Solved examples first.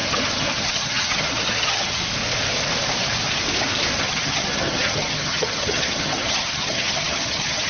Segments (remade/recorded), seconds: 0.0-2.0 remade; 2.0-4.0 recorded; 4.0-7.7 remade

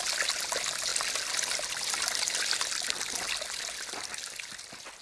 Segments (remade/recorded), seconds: 0.0-5.0 recorded